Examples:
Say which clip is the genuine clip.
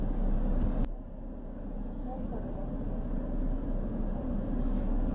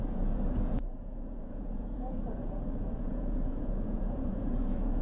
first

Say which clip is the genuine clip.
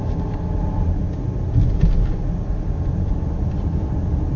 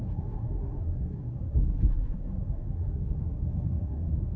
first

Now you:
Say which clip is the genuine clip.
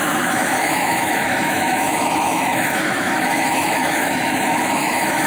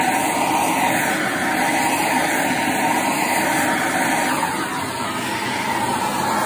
second